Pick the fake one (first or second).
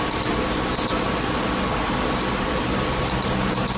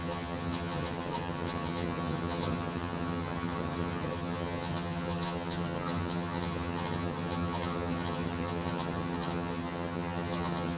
second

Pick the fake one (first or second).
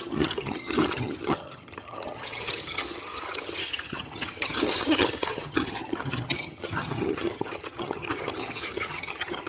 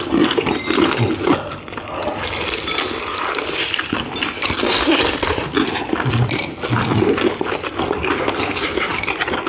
first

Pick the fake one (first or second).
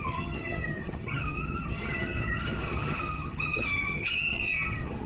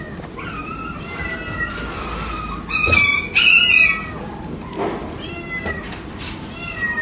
first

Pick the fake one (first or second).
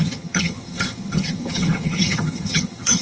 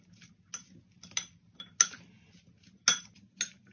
first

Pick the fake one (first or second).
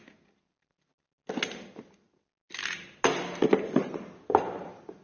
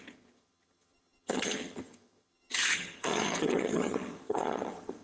second